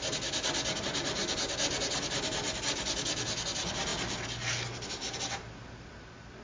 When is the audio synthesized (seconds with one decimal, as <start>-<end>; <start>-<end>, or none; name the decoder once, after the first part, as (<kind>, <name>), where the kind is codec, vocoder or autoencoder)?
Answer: none